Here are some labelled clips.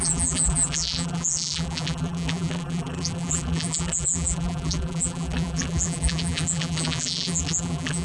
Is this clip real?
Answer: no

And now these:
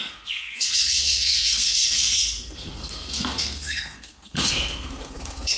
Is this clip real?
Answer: no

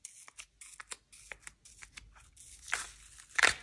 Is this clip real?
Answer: yes